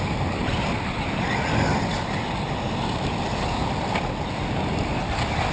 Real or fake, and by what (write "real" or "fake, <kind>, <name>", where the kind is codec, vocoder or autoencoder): real